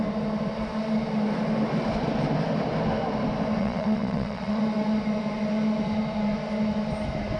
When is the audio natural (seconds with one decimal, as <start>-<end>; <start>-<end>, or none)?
0.0-3.6; 4.6-7.4